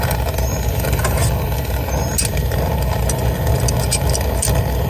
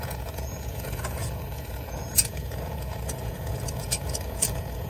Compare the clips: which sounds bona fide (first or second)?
first